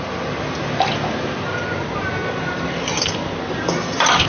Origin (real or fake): real